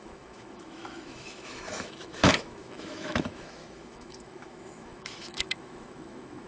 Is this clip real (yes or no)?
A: no